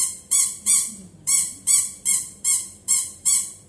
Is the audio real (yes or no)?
no